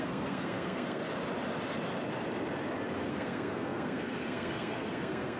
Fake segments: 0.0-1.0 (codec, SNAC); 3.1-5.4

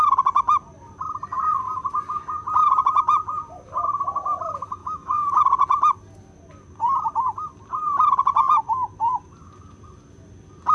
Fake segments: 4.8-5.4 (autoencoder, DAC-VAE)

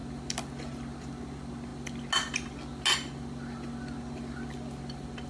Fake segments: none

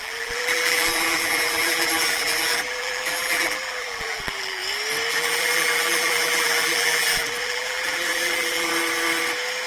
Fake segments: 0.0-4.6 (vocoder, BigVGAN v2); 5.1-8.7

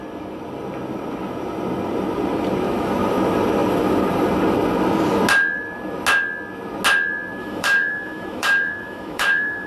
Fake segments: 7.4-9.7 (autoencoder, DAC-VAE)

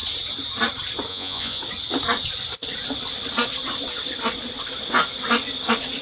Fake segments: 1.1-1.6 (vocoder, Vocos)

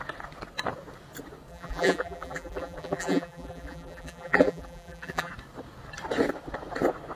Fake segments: 1.5-5.3 (vocoder, BigVGAN v2)

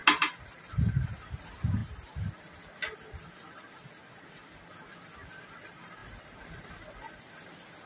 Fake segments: none